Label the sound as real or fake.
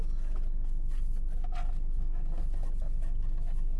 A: real